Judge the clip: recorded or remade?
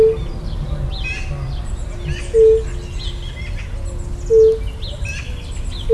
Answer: recorded